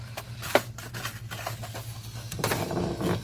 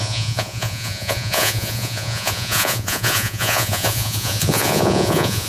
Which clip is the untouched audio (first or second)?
first